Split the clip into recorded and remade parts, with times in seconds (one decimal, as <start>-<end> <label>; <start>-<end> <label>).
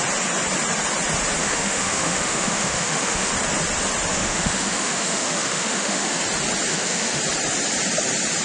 0.0-1.4 recorded; 1.4-3.3 remade; 3.3-4.1 recorded; 4.1-6.2 remade; 6.2-6.7 recorded; 6.7-7.2 remade; 7.2-8.4 recorded